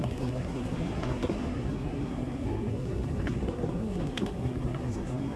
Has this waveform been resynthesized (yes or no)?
yes